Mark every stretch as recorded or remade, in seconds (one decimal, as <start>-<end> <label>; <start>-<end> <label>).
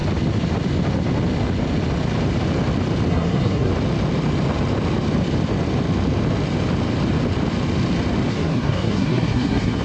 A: 0.0-3.1 recorded; 3.1-3.7 remade; 3.7-8.3 recorded; 8.3-9.8 remade